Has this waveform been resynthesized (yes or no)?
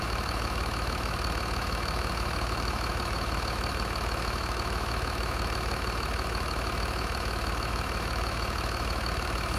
yes